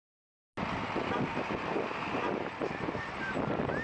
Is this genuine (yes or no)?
yes